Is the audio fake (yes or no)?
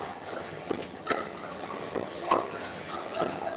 yes